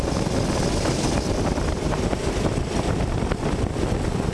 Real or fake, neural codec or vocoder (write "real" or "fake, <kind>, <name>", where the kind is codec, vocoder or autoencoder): real